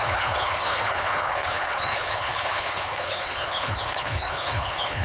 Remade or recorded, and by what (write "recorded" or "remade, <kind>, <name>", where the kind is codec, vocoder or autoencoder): remade, codec, HILCodec